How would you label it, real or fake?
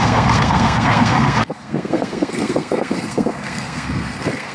fake